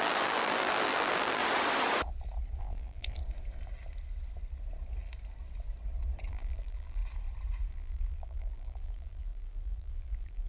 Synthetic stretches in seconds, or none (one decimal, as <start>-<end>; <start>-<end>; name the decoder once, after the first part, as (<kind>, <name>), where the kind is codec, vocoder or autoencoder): 0.0-1.4 (vocoder, BigVGAN v2); 2.6-3.2; 6.3-7.0; 7.7-10.5